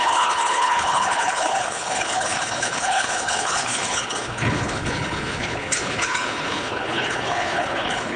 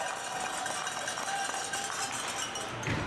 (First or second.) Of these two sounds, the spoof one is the first